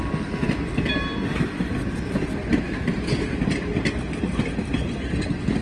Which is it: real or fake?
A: real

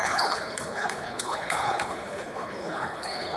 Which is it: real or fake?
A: fake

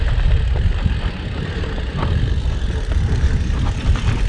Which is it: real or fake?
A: real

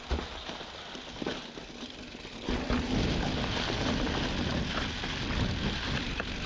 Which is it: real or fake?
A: real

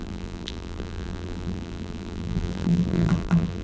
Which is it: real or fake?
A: fake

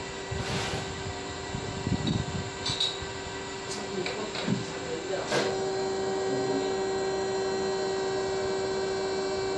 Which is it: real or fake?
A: real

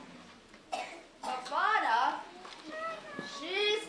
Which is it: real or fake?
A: real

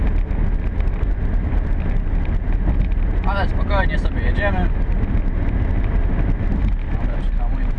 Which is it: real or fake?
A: real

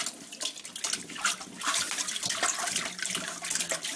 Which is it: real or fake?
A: real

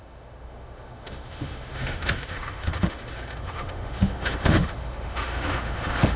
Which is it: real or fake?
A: fake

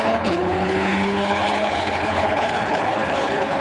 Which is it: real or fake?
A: fake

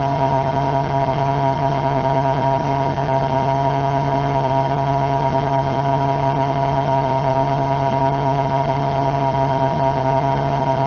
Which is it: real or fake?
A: fake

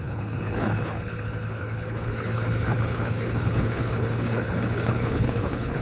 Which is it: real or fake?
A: fake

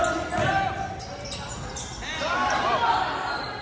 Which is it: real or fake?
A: real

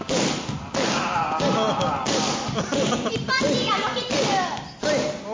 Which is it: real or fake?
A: real